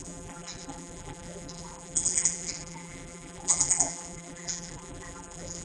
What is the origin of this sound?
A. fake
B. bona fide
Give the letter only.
A